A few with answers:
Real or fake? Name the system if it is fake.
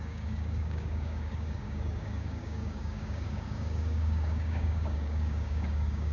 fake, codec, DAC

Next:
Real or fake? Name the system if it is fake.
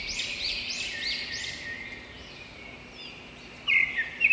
real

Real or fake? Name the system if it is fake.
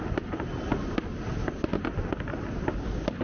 real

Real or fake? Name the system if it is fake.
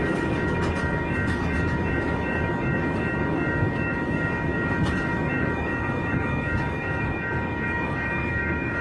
fake, codec, DAC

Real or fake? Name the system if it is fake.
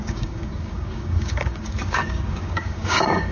fake, codec, DAC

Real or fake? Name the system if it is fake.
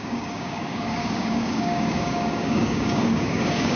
fake, codec, DAC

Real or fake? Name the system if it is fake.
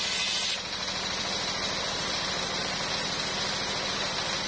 real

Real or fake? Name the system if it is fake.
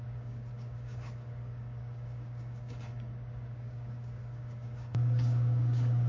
fake, codec, DAC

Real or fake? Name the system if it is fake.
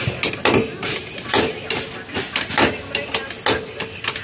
real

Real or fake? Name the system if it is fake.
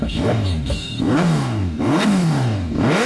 fake, codec, DAC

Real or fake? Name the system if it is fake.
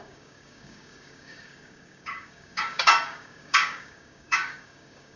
fake, codec, DAC